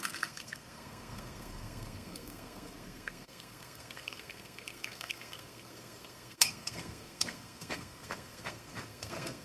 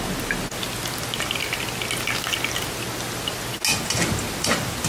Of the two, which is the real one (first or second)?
second